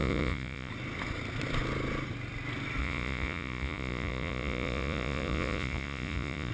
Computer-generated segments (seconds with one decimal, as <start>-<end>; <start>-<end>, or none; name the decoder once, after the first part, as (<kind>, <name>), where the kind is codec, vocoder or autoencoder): 0.0-0.7 (vocoder, Vocos); 2.8-6.5